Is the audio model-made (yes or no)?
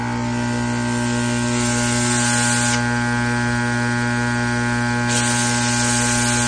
no